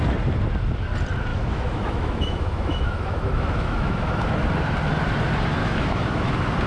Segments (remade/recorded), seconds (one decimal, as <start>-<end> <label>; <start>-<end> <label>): 0.0-1.3 recorded; 1.3-4.4 remade; 4.4-5.6 recorded; 5.6-6.3 remade; 6.3-6.7 recorded